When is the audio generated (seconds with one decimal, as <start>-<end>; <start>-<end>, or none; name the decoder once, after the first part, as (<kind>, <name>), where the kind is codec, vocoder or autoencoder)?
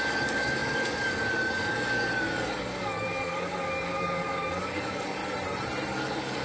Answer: 0.0-5.2 (codec, DAC); 5.9-6.4